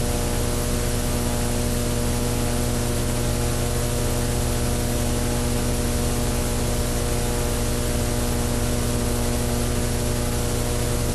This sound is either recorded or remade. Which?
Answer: recorded